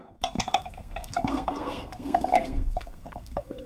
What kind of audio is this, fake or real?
fake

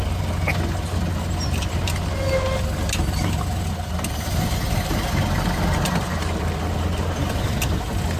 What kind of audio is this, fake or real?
real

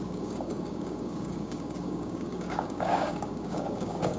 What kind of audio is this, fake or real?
fake